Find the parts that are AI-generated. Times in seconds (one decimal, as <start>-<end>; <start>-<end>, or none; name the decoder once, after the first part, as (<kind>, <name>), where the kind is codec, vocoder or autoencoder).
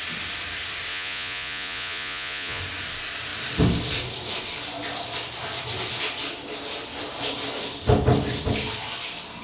0.9-2.6 (vocoder, Vocos)